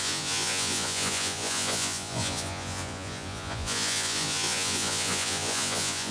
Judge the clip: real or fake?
fake